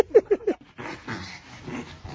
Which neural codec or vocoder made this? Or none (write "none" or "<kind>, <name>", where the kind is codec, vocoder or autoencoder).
none